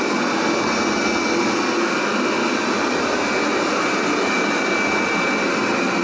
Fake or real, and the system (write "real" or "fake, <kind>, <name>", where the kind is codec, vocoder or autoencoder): real